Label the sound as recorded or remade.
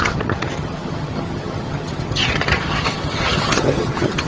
remade